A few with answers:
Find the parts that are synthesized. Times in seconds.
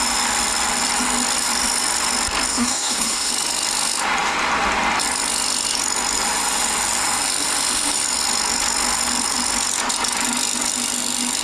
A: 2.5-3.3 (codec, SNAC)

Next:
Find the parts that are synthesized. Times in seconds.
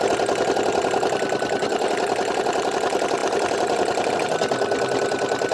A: none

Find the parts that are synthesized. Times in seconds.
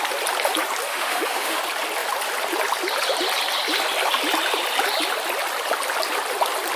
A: 0.9-1.6 (autoencoder, DAC-VAE)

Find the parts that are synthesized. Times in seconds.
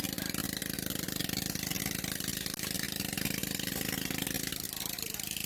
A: none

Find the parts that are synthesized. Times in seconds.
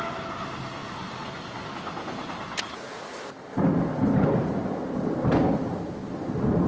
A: none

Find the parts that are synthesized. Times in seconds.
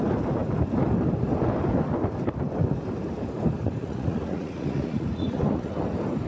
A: 3.8-5.7 (vocoder, Vocos)